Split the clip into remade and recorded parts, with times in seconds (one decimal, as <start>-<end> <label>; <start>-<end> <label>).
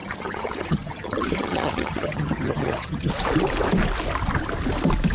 0.0-3.1 remade; 3.1-5.1 recorded